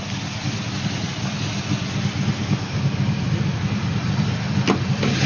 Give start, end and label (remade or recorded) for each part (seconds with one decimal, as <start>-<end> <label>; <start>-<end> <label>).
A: 0.0-5.3 recorded